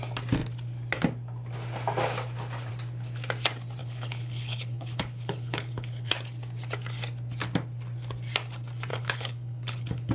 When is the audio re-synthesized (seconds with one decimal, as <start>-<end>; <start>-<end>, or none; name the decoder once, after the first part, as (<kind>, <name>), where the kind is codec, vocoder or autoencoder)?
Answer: 3.8-6.1 (codec, HILCodec); 8.9-10.1